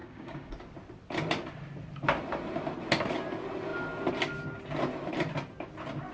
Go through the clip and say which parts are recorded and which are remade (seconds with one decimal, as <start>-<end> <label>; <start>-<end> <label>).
0.0-0.6 remade; 0.6-6.1 recorded